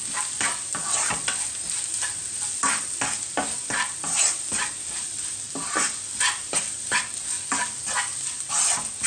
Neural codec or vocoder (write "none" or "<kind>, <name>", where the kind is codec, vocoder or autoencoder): none